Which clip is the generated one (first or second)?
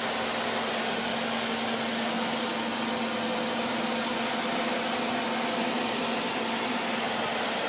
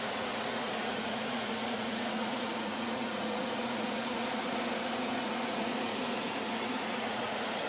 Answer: second